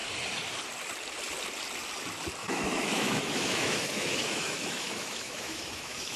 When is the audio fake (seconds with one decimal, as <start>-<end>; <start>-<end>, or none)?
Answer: 2.4-6.2

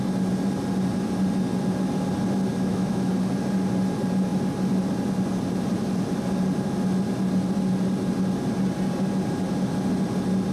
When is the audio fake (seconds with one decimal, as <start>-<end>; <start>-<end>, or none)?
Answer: 2.5-3.1

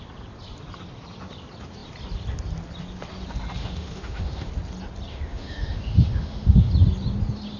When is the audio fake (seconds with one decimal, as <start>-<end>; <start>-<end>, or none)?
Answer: 3.6-4.5; 5.1-6.7

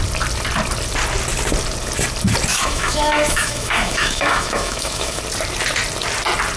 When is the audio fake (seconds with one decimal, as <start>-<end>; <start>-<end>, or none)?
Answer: 2.5-5.2

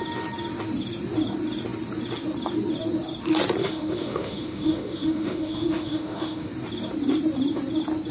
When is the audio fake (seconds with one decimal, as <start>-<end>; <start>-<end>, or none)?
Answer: 3.6-6.5

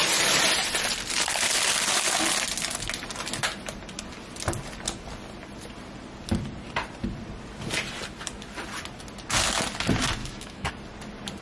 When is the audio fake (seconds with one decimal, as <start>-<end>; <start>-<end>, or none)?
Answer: 10.2-10.7

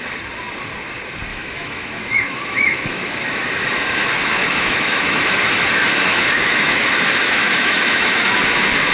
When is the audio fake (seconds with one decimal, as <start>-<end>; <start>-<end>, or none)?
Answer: 1.3-5.6; 6.0-8.4